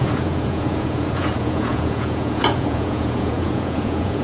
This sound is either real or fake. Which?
fake